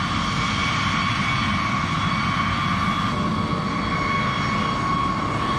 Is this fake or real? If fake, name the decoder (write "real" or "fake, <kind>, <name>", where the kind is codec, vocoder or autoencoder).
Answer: real